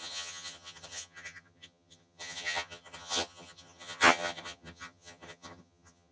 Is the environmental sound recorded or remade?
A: remade